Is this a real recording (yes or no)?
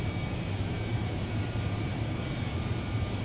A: no